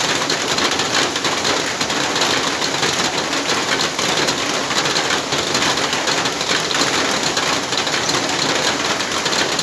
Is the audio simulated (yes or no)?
no